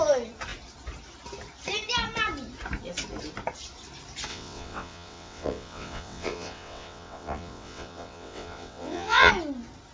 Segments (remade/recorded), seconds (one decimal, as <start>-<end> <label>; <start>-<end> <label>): 0.0-4.3 recorded; 4.3-9.3 remade; 9.3-9.9 recorded